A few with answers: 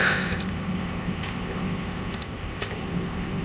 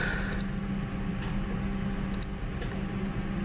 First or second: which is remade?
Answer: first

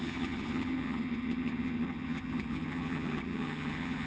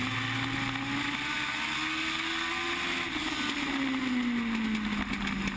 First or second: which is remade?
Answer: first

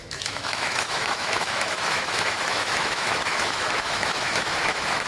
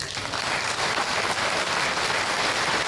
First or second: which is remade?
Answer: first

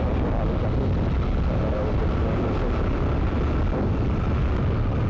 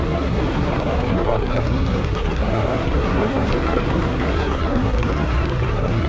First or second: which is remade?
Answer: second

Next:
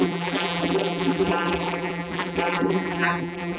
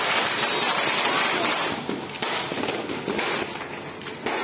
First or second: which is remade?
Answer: first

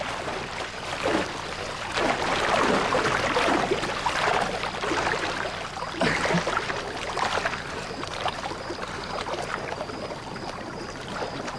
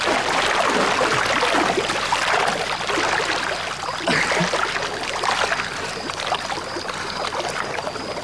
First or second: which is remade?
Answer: first